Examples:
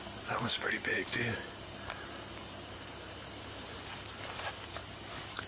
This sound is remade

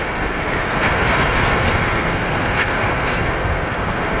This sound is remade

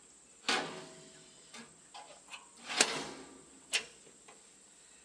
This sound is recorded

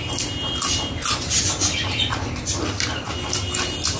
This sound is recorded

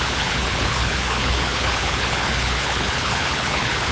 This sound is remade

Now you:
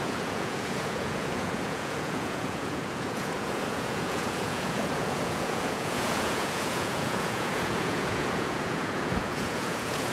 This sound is remade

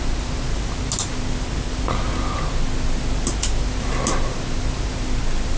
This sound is recorded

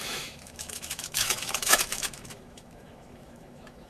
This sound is remade